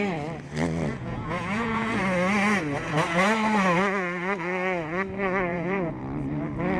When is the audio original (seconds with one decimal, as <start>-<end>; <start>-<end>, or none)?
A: 0.0-0.9; 2.0-5.5; 6.0-6.8